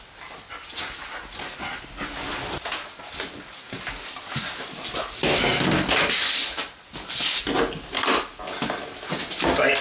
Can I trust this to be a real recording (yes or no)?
yes